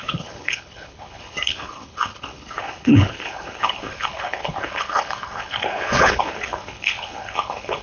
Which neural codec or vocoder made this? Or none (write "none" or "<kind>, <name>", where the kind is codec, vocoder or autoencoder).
codec, HILCodec